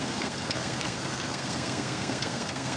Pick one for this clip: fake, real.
fake